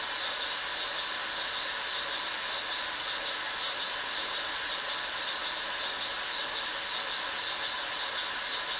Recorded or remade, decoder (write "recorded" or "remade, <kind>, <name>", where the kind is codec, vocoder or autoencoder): recorded